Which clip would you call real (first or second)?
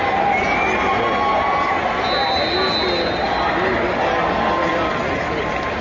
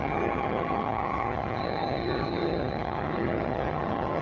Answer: first